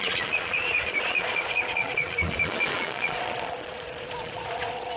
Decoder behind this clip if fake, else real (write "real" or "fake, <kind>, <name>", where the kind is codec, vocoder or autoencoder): fake, vocoder, Vocos